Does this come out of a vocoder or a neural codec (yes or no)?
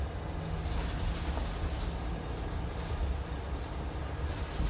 no